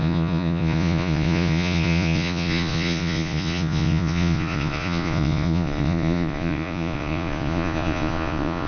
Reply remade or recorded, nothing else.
remade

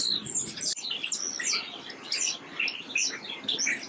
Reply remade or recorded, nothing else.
recorded